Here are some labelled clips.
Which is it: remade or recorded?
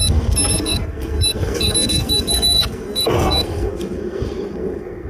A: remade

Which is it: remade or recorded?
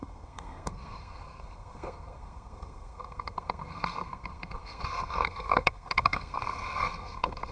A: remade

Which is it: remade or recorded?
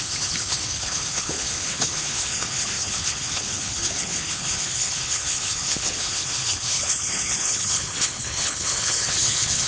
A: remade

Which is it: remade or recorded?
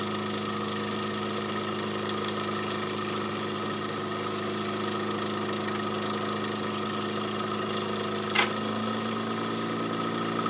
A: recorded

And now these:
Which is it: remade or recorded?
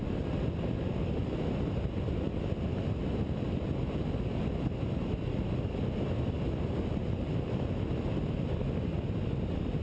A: recorded